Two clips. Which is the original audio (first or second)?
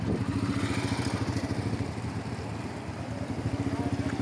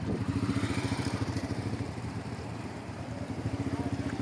first